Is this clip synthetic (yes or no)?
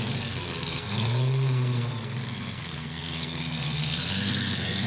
yes